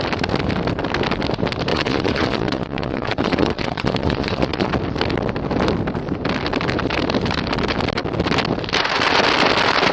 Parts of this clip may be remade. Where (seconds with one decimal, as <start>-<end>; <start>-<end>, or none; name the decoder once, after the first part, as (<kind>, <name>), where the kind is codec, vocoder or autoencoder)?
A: 1.7-4.7 (vocoder, Vocos)